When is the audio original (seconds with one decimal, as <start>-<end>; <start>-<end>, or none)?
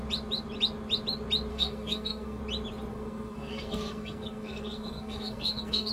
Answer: 0.0-1.5; 2.4-2.9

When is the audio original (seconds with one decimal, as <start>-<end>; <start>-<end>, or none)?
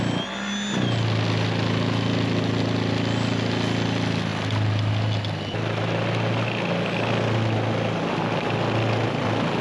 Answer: 0.0-9.6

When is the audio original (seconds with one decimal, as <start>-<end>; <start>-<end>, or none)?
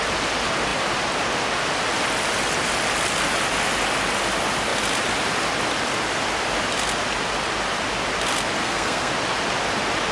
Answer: 0.0-8.6; 9.1-10.1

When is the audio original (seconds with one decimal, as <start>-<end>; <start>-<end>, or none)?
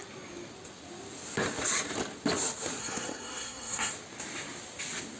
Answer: 0.0-2.8; 3.9-5.2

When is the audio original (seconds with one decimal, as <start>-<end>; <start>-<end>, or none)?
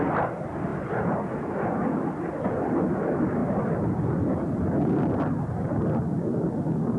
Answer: 0.0-7.0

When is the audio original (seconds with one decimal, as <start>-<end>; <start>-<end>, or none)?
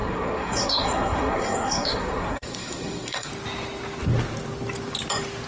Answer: 3.3-5.5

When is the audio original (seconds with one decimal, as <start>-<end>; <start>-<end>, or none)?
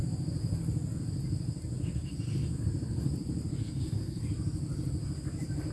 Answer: 0.0-3.6; 4.3-5.7